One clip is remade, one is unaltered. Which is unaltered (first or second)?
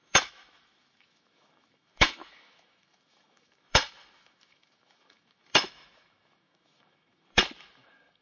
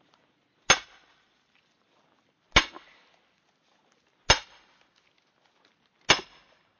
second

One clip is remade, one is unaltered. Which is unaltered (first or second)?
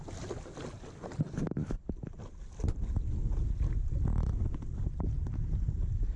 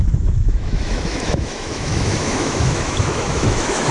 first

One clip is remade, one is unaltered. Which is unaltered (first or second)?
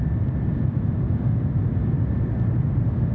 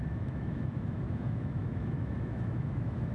first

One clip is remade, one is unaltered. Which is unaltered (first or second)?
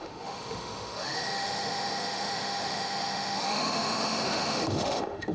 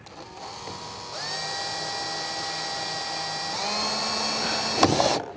second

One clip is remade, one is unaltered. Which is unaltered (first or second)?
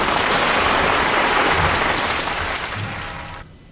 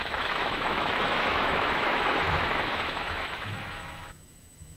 first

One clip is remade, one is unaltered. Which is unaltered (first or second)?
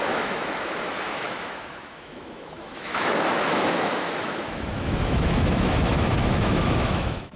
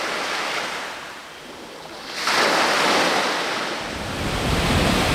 second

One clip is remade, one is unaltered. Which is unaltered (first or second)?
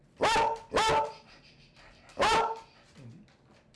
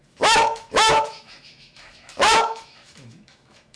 first